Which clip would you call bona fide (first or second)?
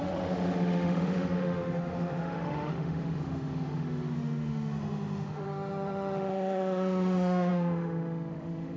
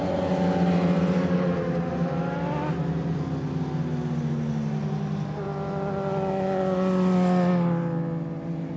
second